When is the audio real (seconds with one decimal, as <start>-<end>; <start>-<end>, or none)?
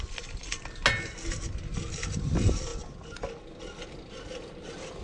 0.0-5.0